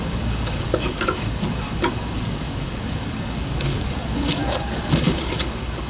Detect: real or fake fake